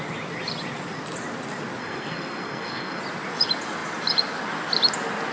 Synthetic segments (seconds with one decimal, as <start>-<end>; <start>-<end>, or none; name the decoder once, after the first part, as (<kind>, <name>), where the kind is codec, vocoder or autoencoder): 1.8-3.0 (codec, SNAC)